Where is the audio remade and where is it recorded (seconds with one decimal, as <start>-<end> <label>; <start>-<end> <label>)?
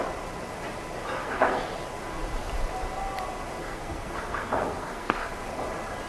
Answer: 0.0-1.2 recorded; 1.2-1.7 remade; 1.7-3.6 recorded; 3.6-5.3 remade; 5.3-6.1 recorded